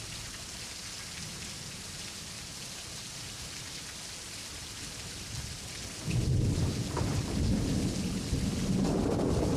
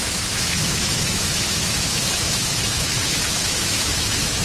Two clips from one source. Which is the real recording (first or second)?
first